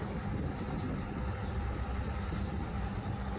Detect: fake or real real